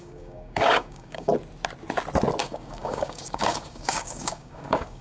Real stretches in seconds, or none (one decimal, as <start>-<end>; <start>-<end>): 1.3-2.4